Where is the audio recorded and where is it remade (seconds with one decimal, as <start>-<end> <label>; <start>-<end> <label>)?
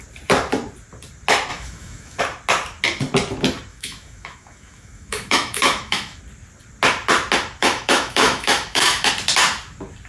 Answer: 0.0-1.5 recorded; 1.5-2.2 remade; 2.2-3.7 recorded; 3.7-6.2 remade; 6.2-7.6 recorded; 7.6-9.1 remade; 9.1-10.1 recorded